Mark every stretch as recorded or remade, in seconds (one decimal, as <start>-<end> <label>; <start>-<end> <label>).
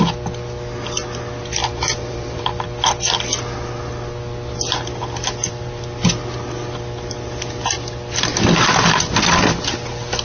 0.0-1.6 recorded; 1.6-2.4 remade; 2.4-10.2 recorded